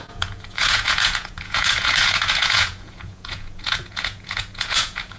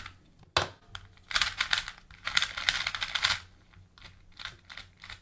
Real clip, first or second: second